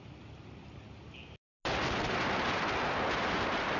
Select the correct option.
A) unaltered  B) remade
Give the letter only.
A